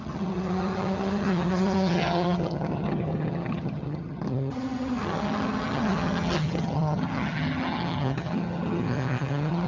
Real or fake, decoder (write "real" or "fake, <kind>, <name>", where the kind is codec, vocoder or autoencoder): fake, vocoder, HiFi-GAN